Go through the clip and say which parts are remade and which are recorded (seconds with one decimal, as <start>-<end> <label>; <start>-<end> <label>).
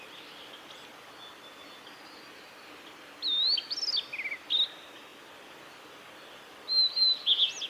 0.0-7.7 recorded